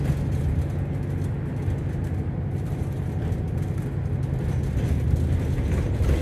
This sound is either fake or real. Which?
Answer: real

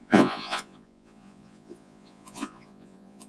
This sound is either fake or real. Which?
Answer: fake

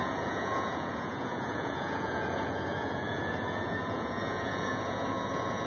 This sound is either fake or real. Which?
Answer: fake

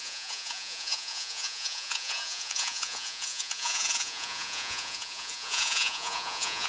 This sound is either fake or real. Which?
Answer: fake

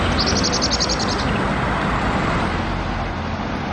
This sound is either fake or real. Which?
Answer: real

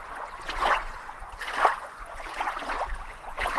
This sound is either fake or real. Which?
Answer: fake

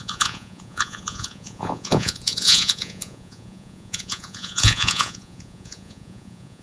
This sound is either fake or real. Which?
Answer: fake